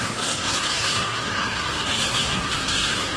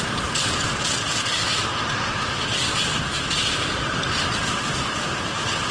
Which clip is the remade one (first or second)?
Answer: first